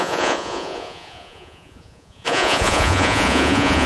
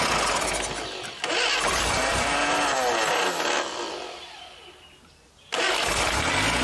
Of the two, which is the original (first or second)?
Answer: second